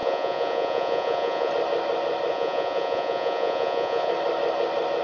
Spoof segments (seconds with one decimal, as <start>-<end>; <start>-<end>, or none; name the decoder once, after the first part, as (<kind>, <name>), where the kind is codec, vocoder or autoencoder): 0.0-1.5 (vocoder, Vocos); 2.3-4.1